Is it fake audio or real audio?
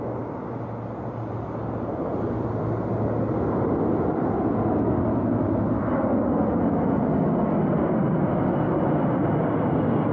real